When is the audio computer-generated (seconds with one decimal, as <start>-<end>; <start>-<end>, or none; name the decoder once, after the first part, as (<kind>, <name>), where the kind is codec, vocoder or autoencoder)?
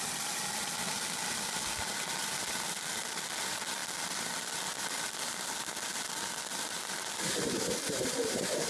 none